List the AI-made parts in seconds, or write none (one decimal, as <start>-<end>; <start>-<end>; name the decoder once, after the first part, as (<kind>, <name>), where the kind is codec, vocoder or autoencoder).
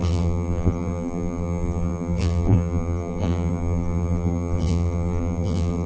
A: 0.0-5.9 (vocoder, BigVGAN v2)